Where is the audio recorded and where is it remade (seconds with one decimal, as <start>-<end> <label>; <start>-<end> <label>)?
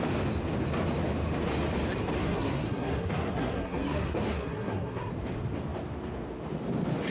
0.0-2.2 recorded; 2.2-5.1 remade; 5.1-7.1 recorded